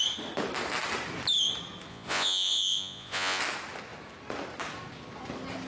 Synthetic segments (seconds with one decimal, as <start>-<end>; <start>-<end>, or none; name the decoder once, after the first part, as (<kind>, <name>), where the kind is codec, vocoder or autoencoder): 1.9-3.4 (vocoder, Vocos)